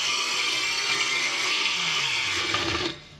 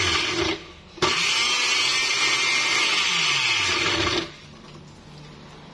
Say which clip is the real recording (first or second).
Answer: second